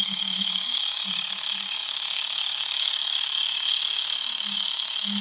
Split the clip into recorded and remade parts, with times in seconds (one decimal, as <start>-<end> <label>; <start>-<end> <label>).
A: 0.0-5.2 remade